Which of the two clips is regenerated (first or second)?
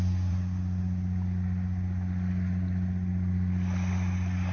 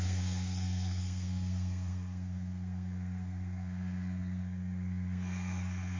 second